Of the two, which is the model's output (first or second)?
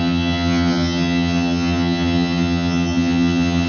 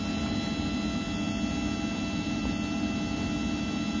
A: first